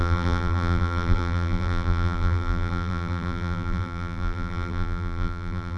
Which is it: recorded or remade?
remade